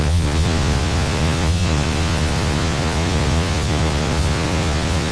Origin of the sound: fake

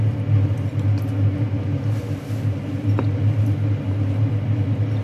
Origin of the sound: real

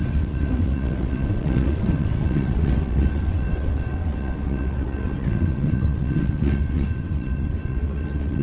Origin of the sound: fake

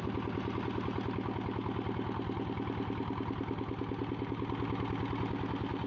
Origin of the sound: real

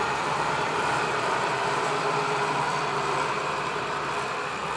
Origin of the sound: fake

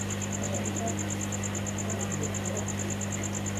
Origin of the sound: real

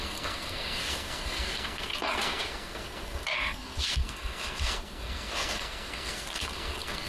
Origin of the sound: fake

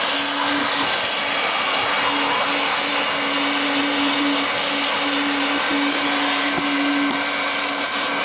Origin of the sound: real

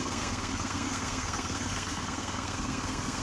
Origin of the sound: fake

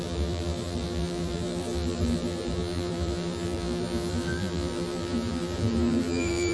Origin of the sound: fake